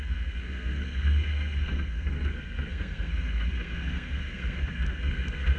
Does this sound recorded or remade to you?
remade